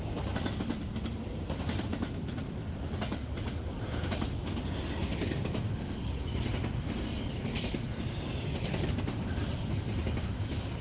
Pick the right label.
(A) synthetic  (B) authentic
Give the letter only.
B